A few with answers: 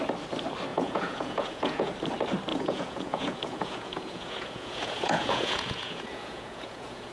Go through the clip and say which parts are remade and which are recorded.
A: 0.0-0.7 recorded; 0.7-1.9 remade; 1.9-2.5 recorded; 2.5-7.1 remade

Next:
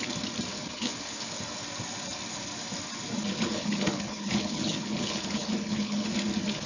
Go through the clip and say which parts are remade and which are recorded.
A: 0.0-0.5 recorded; 0.5-1.4 remade; 1.4-3.3 recorded; 3.3-6.1 remade; 6.1-6.7 recorded